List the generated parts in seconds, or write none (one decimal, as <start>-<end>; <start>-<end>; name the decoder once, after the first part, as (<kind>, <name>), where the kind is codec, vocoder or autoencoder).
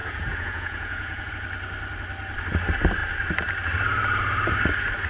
0.0-1.3 (vocoder, Vocos)